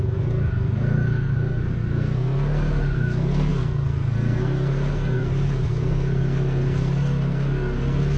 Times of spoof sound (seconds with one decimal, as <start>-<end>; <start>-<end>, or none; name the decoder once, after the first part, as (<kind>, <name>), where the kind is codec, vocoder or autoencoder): 0.0-8.2 (codec, SNAC)